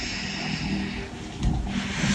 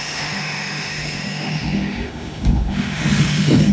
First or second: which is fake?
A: second